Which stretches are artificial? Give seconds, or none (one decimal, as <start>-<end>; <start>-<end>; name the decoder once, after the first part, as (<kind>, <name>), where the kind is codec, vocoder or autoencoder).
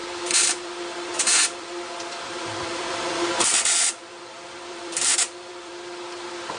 0.0-5.7 (vocoder, BigVGAN v2)